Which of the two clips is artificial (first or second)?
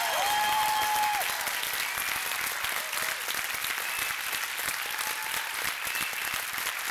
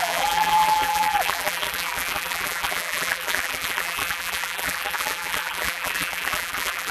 second